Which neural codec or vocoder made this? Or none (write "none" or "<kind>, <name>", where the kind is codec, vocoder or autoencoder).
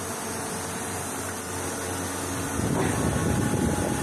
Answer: none